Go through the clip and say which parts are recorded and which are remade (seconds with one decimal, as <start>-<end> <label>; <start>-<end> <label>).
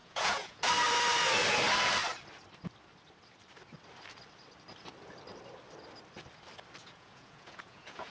0.0-0.7 remade; 0.7-6.8 recorded; 6.8-8.1 remade